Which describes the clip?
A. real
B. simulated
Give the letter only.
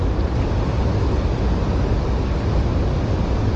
A